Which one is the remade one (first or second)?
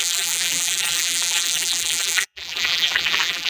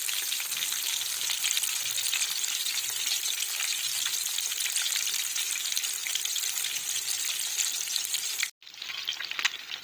first